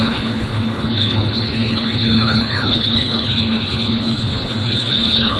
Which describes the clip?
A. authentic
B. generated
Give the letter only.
B